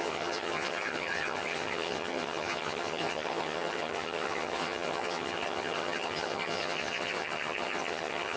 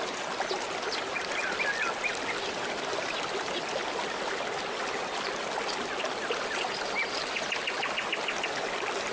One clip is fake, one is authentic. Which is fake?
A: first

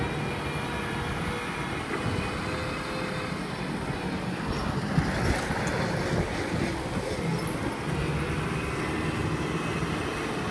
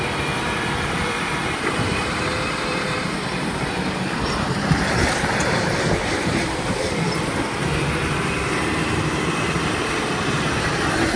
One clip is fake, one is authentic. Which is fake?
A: second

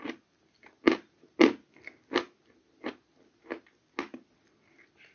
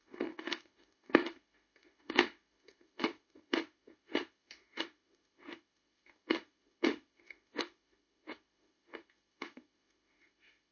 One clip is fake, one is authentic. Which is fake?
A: second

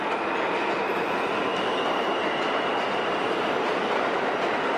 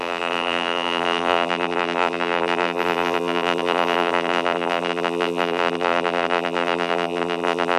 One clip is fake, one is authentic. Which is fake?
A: second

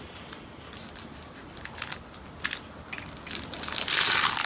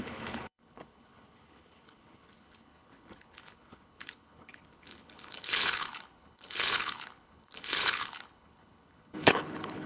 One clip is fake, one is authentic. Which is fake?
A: second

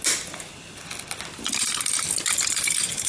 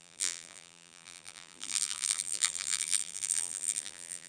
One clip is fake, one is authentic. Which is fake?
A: second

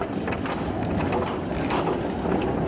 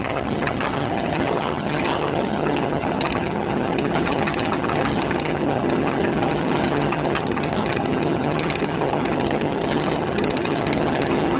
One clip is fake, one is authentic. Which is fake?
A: second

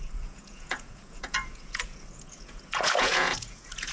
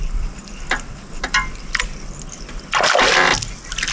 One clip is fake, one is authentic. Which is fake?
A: first